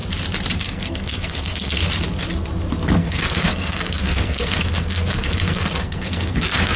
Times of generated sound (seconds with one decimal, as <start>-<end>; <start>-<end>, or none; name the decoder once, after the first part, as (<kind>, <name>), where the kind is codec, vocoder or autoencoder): 0.6-1.8 (codec, SNAC); 2.9-6.8